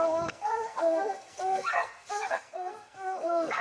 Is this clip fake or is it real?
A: fake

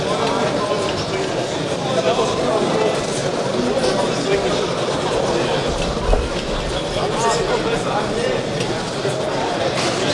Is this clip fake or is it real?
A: real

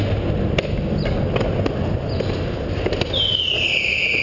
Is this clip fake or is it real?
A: real